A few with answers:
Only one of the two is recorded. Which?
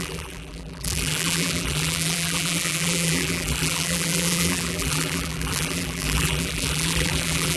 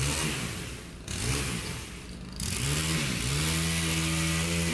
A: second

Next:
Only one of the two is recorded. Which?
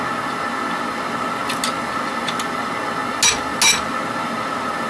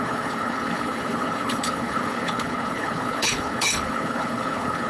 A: first